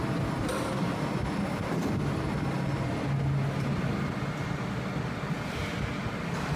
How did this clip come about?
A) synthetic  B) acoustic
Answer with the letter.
B